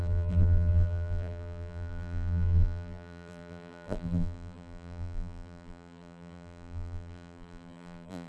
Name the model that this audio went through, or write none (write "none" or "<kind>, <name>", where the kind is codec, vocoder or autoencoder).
vocoder, BigVGAN v2